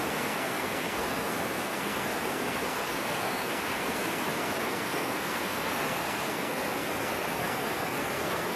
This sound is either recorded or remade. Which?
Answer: remade